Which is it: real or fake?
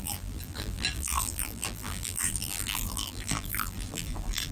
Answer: fake